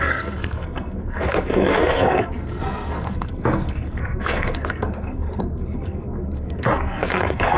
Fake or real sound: fake